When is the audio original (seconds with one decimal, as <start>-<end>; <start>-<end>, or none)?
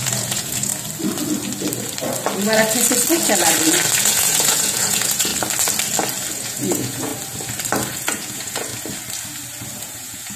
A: 0.7-4.0; 5.3-6.3; 7.1-7.9; 8.7-9.8